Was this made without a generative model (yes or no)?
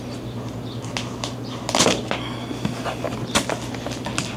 yes